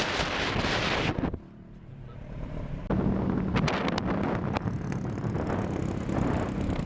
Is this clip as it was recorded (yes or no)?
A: yes